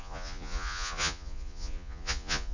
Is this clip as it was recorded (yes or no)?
no